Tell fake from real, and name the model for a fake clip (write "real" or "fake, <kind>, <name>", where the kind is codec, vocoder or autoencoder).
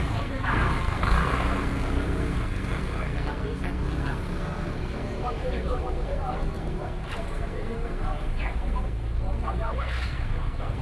fake, codec, SNAC